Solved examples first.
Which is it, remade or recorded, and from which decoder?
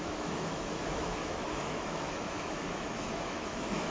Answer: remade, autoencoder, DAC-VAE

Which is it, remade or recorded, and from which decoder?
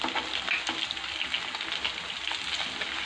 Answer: recorded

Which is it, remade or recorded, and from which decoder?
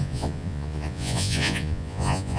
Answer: remade, vocoder, Vocos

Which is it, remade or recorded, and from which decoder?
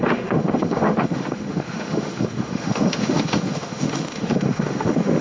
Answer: remade, autoencoder, DAC-VAE